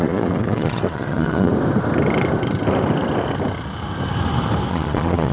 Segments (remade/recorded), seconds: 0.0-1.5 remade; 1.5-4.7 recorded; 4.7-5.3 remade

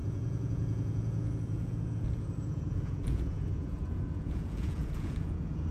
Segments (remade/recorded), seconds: 0.0-5.7 remade

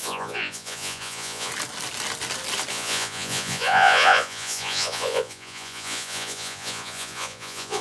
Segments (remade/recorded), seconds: 0.0-1.5 remade; 1.5-2.7 recorded; 2.7-7.8 remade

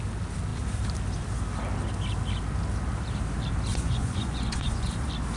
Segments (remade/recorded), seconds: 0.0-3.7 recorded; 3.7-4.9 remade; 4.9-5.4 recorded

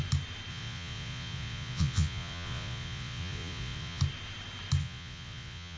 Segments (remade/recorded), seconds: 0.0-0.5 recorded; 0.5-4.0 remade; 4.0-4.8 recorded; 4.8-5.8 remade